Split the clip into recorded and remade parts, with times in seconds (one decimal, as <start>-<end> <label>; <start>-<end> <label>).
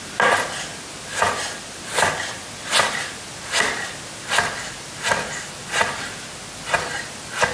0.0-7.5 recorded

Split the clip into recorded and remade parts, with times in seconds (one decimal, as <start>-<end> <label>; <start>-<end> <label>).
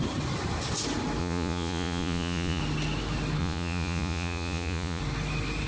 0.0-1.2 recorded; 1.2-2.6 remade; 2.6-3.4 recorded; 3.4-5.0 remade; 5.0-5.7 recorded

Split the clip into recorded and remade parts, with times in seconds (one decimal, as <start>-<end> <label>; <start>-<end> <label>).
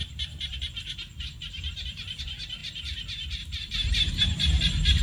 0.0-5.0 remade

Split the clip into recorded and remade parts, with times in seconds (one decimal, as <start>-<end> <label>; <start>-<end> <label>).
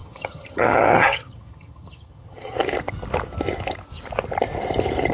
0.0-2.6 remade; 2.6-5.1 recorded